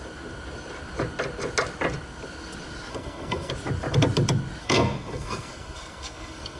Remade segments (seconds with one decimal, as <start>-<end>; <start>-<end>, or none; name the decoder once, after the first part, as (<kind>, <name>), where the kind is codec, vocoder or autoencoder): 2.9-3.5 (codec, SNAC); 4.6-6.6

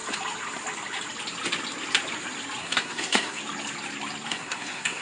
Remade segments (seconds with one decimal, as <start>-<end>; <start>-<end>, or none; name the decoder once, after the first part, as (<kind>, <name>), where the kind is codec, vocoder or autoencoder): 2.6-3.4 (codec, SNAC); 4.3-5.0

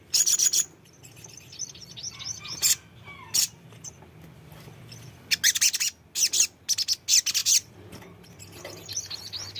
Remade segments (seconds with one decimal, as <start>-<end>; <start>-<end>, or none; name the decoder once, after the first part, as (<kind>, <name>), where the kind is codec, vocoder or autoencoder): none

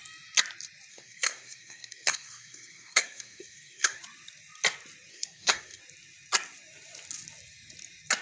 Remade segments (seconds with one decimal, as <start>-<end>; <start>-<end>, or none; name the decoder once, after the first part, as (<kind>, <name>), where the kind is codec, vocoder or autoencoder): 0.9-4.0 (codec, SNAC); 5.1-5.8

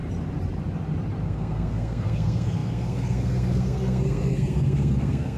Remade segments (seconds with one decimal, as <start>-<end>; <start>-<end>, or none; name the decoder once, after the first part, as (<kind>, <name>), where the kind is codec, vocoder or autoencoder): 1.2-5.4 (codec, SNAC)

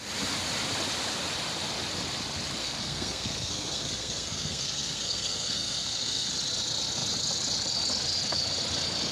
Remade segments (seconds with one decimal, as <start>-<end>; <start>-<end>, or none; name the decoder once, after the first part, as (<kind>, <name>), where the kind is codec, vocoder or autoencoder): 2.6-6.3 (codec, SNAC)

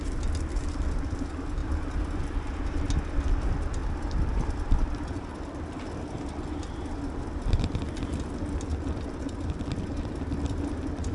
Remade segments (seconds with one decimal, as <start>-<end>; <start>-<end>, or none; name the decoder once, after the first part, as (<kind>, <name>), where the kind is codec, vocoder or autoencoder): none

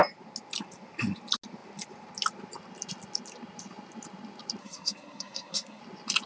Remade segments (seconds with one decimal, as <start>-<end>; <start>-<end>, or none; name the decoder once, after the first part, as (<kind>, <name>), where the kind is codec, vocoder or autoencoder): 4.6-5.8 (codec, SNAC)